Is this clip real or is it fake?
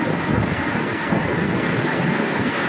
fake